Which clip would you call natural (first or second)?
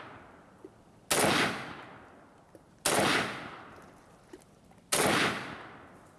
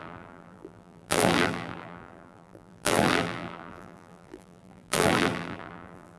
first